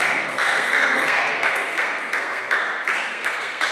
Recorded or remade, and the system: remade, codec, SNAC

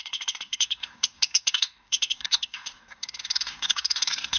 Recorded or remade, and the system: remade, codec, SNAC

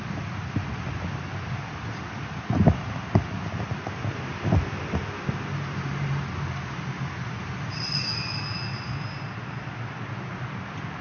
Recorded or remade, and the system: recorded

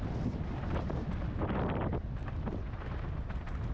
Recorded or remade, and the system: recorded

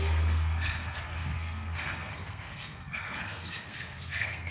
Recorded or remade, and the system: remade, codec, SNAC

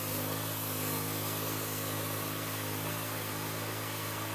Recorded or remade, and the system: remade, codec, SNAC